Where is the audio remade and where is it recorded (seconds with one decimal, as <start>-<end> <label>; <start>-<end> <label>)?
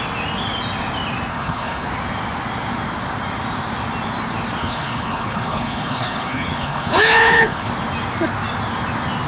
0.0-1.3 recorded; 1.3-1.9 remade; 1.9-4.6 recorded; 4.6-7.7 remade; 7.7-9.3 recorded